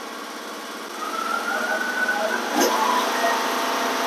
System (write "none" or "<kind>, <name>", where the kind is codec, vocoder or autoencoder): none